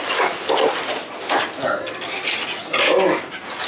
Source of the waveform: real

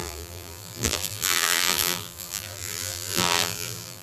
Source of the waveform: fake